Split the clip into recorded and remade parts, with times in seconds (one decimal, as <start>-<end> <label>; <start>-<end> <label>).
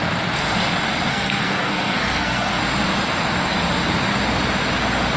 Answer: 0.0-1.1 recorded; 1.1-2.6 remade; 2.6-5.2 recorded